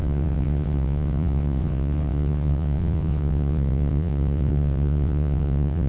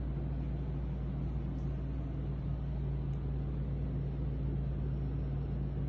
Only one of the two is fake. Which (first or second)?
first